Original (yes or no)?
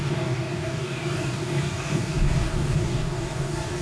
no